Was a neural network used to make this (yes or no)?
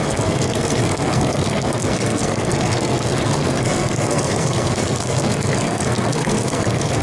yes